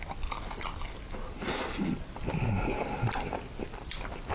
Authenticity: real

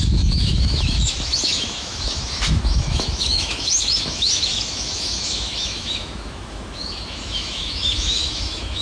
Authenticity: fake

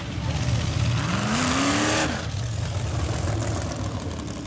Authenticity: real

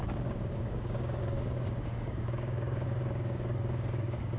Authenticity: fake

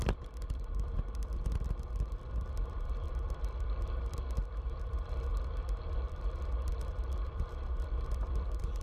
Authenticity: fake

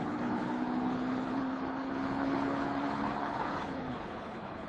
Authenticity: fake